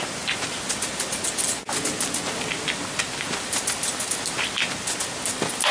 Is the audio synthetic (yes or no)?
no